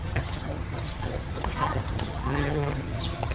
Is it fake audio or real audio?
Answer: fake